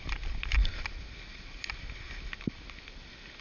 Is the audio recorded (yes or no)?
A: yes